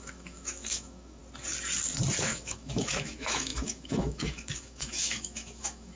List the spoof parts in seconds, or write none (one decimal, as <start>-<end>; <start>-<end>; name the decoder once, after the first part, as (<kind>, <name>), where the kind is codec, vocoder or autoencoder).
0.0-1.2 (autoencoder, DAC-VAE); 2.2-6.0